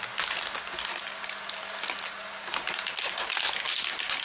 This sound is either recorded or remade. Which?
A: recorded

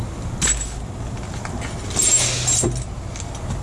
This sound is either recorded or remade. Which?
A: recorded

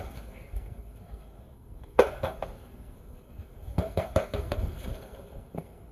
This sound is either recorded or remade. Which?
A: remade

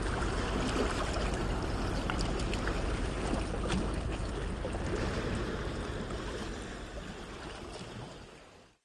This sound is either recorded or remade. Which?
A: recorded